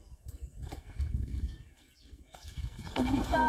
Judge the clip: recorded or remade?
remade